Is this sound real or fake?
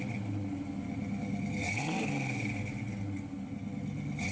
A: real